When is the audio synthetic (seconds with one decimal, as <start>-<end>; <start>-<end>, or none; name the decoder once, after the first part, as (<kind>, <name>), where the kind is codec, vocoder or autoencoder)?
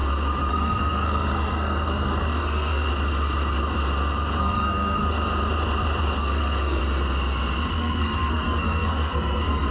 0.5-2.9 (codec, SNAC); 4.4-5.0; 6.2-6.8; 7.7-9.7